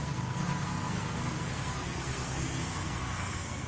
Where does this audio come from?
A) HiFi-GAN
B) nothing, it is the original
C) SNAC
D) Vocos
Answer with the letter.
C